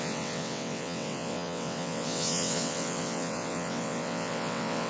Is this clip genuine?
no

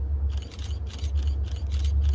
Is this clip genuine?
yes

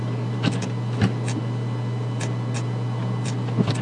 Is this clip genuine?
yes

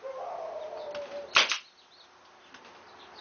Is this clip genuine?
yes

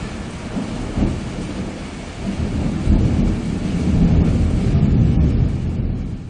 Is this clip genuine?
yes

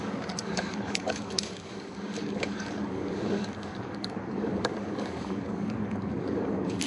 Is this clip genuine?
no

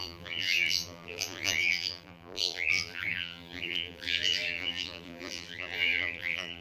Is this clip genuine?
no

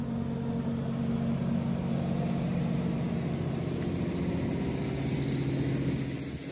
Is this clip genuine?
yes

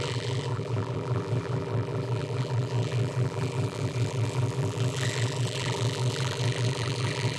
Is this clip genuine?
no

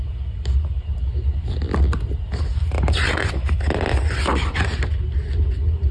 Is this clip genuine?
yes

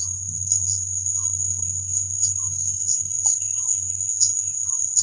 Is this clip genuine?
no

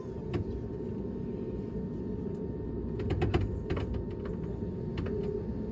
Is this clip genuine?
yes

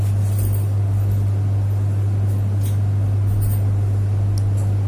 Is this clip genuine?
yes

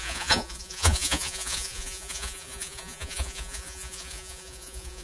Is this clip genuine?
no